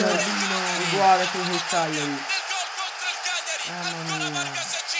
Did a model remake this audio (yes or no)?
no